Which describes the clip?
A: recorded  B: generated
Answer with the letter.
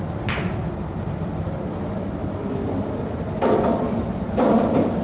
B